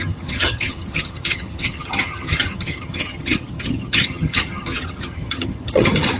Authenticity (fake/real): fake